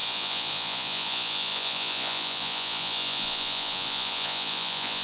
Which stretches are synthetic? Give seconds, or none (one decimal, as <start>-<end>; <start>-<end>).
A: 0.0-5.0

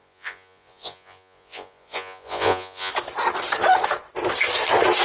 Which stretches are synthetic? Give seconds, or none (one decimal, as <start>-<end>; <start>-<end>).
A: 0.0-2.9

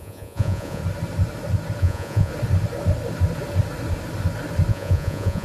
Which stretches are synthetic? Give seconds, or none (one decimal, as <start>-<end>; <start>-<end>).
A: 0.0-0.8; 1.8-2.3; 4.7-5.4

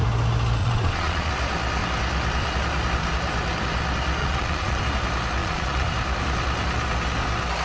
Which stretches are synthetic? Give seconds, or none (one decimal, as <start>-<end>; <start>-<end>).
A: 0.6-1.3; 4.2-4.8; 5.4-5.9

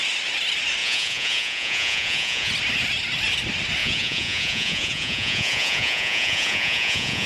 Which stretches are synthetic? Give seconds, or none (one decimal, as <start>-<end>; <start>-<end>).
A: 0.8-2.5; 3.8-7.3

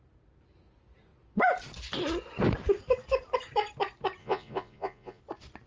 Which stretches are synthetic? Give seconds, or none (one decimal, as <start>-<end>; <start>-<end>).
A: 4.2-5.2

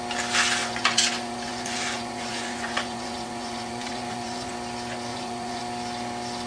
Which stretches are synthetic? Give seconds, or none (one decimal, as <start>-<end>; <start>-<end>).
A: 0.6-4.5; 5.1-5.6

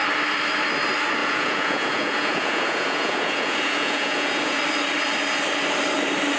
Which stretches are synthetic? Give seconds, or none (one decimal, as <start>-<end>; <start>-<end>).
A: 1.2-4.6